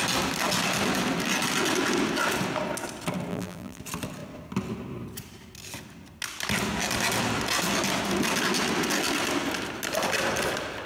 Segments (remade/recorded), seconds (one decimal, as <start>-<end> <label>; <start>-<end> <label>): 0.0-3.3 recorded; 3.3-3.8 remade; 3.8-10.9 recorded

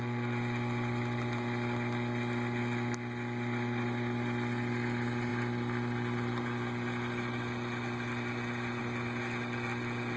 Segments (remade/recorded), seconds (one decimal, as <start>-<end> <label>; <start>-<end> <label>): 0.0-10.2 recorded

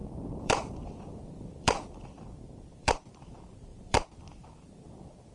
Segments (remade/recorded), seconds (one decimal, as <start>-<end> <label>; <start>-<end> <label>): 0.0-3.2 remade; 3.2-3.7 recorded; 3.7-5.3 remade

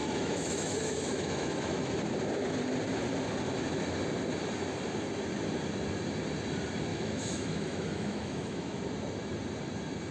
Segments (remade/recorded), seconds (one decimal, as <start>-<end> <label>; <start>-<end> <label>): 0.0-1.9 remade; 1.9-6.9 recorded; 6.9-8.8 remade; 8.8-10.1 recorded